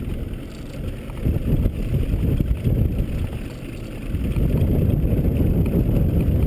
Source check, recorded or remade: recorded